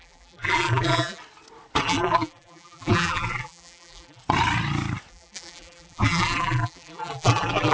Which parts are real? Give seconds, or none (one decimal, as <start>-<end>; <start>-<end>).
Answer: 1.2-1.8; 4.2-5.1